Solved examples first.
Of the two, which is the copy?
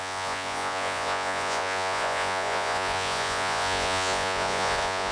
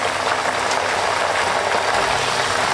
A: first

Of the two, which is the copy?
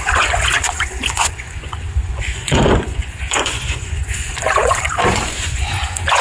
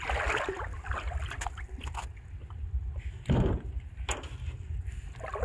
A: first